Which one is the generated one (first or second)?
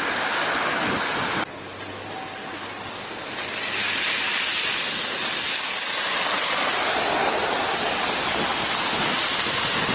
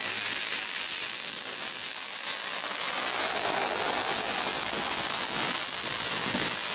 second